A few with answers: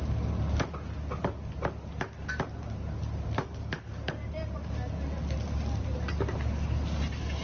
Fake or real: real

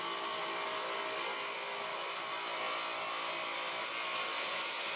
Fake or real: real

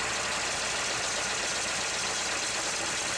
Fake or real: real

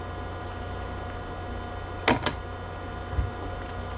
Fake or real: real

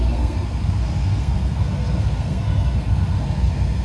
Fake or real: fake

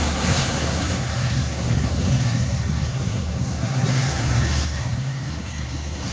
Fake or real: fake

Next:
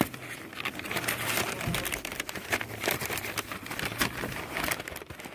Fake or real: real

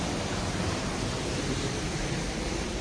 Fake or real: fake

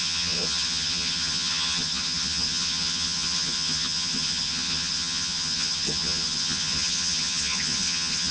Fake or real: fake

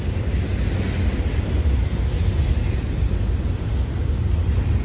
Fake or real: real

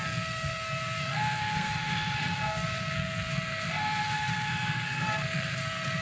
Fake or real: fake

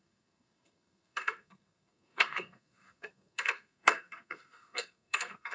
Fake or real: fake